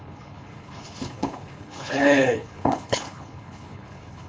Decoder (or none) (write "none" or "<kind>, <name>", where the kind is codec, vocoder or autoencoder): codec, HILCodec